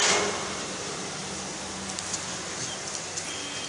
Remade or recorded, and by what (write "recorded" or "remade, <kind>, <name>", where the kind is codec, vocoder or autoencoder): recorded